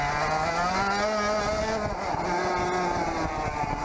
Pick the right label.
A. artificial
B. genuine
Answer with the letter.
B